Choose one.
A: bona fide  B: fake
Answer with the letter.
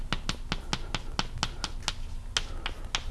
A